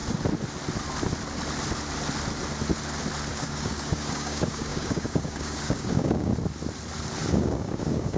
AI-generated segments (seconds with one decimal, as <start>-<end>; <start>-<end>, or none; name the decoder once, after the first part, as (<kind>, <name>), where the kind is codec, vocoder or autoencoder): 3.3-6.3 (codec, DAC); 7.3-8.2